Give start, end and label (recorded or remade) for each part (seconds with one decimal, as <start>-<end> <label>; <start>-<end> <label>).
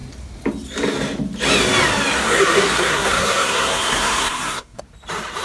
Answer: 0.0-2.2 recorded; 2.2-4.8 remade; 4.8-5.4 recorded